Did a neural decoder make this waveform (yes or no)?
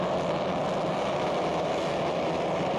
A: no